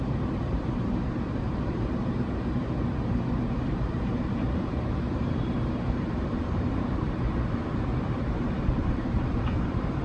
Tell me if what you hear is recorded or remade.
remade